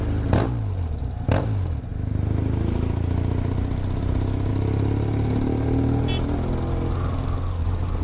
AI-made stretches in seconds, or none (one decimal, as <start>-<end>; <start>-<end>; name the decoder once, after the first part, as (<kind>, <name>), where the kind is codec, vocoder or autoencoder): none